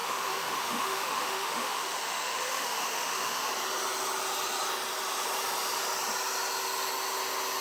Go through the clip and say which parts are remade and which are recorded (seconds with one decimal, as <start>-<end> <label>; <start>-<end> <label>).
0.0-3.5 remade; 3.5-7.6 recorded